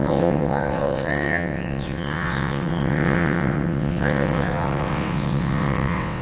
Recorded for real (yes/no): no